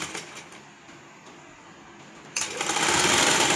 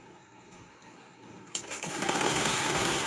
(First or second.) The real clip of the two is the first